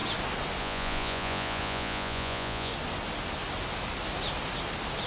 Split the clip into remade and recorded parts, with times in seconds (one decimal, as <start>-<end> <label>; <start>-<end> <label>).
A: 0.0-0.6 recorded; 0.6-2.7 remade; 2.7-5.1 recorded